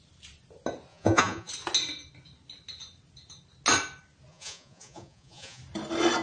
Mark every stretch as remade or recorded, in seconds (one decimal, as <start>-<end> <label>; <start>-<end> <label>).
0.0-0.9 recorded; 0.9-1.5 remade; 1.5-4.3 recorded; 4.3-5.6 remade; 5.6-6.2 recorded